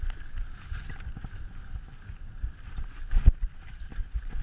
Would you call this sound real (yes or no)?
yes